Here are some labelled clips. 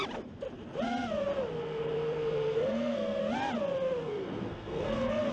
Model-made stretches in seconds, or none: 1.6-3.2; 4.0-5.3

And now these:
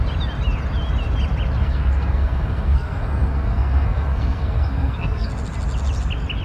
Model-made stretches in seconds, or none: 1.6-5.3

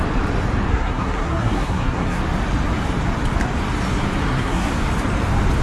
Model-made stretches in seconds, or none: 0.7-2.2; 4.2-4.7

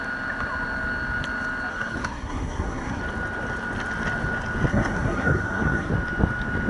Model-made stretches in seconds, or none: 1.7-3.0; 4.7-5.9